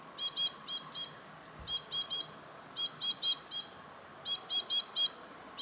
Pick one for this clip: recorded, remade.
recorded